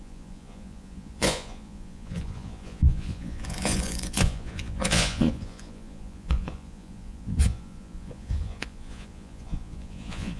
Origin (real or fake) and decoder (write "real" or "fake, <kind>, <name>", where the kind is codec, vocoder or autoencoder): fake, vocoder, Vocos